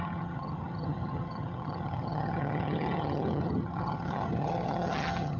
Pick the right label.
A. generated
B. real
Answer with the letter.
A